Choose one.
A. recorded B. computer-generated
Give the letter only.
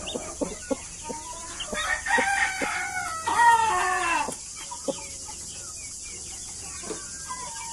A